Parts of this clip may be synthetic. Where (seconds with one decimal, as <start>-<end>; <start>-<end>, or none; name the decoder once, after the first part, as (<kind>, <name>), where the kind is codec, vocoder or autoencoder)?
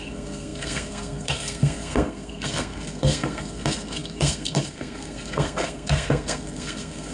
0.0-7.1 (codec, SNAC)